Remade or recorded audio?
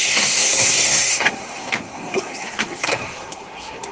remade